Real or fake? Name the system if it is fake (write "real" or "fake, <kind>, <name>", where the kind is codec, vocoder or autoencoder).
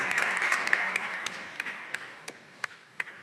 fake, codec, DAC